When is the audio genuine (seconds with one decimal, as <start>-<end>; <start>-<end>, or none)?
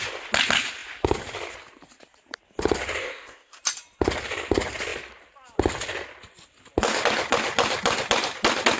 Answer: 0.0-3.0; 3.6-8.8